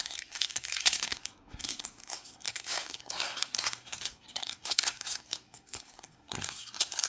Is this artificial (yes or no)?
yes